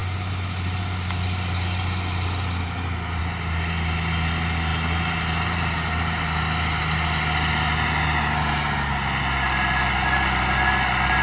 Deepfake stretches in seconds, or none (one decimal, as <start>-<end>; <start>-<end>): none